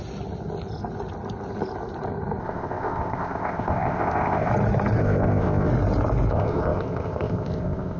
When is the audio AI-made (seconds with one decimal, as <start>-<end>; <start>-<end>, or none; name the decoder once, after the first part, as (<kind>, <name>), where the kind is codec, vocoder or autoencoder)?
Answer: 2.4-4.5 (codec, ZipCodec); 5.0-5.7; 6.3-8.0